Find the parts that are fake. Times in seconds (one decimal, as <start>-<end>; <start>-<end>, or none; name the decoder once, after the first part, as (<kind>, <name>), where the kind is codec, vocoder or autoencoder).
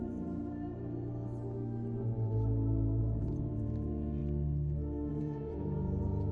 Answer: 0.0-0.4 (vocoder, Vocos); 3.0-4.2; 5.1-6.3